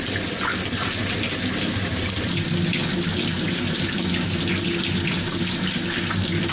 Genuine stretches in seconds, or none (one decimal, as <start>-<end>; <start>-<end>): 0.0-3.1; 4.1-6.5